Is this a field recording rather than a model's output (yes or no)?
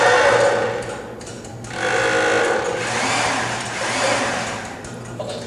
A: yes